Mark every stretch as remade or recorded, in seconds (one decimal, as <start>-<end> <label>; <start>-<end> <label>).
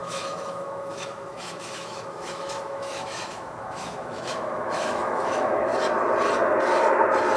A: 0.0-5.7 remade; 5.7-7.4 recorded